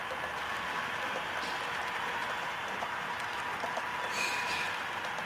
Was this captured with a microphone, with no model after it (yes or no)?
yes